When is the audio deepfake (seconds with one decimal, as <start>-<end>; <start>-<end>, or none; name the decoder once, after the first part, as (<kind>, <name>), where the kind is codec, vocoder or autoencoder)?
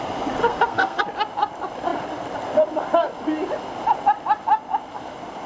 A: 0.4-1.0 (codec, SNAC)